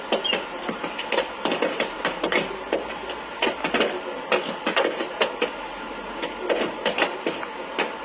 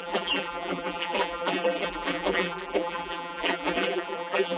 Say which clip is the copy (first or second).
second